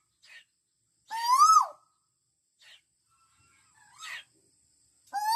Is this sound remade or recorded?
recorded